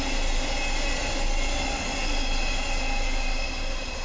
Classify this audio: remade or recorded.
recorded